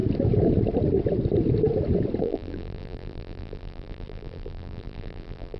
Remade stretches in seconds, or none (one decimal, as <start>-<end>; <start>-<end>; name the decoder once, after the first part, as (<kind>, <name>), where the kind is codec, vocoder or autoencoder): 2.2-5.6 (vocoder, BigVGAN v2)